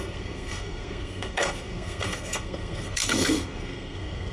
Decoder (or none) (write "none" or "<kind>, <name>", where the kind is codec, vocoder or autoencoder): codec, SNAC